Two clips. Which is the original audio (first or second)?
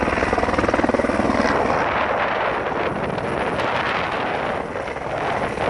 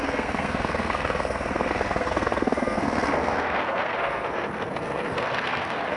first